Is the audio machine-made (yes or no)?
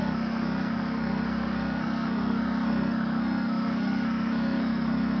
yes